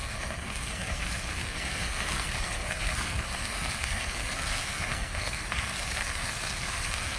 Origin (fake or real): fake